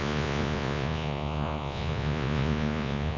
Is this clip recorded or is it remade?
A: remade